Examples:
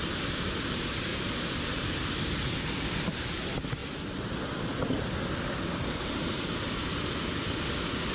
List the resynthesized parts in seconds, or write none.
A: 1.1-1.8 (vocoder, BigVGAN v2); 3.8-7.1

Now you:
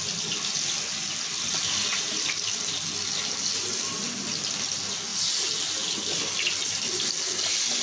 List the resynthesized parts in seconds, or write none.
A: none

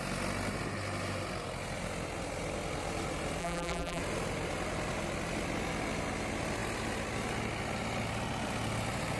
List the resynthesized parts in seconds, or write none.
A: 3.4-4.0 (vocoder, BigVGAN v2)

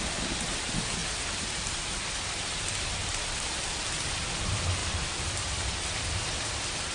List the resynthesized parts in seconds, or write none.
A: 1.0-1.9 (vocoder, BigVGAN v2); 4.8-5.8

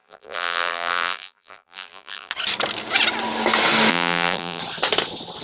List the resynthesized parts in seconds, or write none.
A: 0.0-2.3 (vocoder, BigVGAN v2); 3.9-4.6

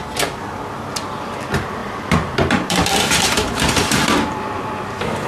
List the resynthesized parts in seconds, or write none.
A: 0.0-5.3 (vocoder, BigVGAN v2)

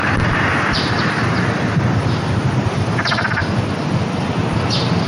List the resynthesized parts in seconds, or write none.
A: 0.0-3.4 (vocoder, BigVGAN v2); 4.2-5.1

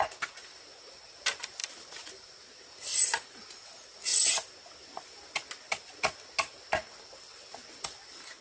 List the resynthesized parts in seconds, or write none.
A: 1.6-2.4 (vocoder, BigVGAN v2); 2.9-3.4; 7.3-8.4